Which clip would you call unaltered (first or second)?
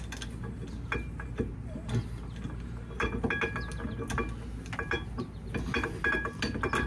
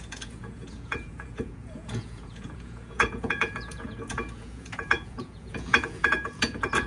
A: first